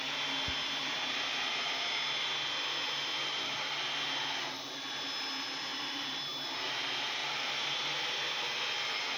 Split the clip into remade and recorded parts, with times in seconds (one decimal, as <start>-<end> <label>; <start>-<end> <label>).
0.0-0.8 recorded; 0.8-1.9 remade; 1.9-5.7 recorded; 5.7-6.7 remade; 6.7-7.2 recorded; 7.2-8.2 remade; 8.2-9.2 recorded